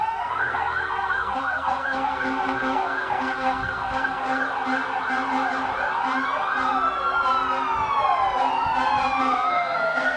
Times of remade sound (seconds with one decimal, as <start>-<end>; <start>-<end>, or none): 0.0-4.4; 9.2-10.2